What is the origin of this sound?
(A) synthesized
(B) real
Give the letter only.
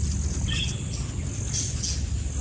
B